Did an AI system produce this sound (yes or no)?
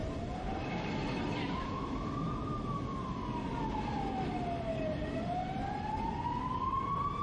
no